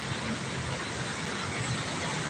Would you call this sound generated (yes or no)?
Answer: no